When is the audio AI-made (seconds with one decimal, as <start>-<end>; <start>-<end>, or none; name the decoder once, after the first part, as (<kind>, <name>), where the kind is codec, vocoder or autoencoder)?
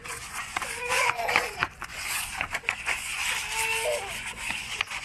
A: 0.0-3.2 (vocoder, Vocos); 4.1-5.0